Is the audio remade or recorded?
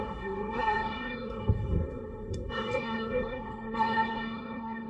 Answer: remade